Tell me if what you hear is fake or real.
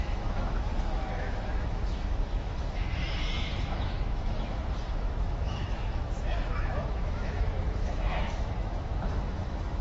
fake